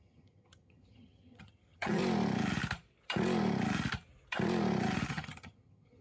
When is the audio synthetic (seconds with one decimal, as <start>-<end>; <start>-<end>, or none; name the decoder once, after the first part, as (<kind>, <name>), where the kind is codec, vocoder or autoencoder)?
0.0-2.0 (vocoder, HiFi-GAN); 5.1-6.0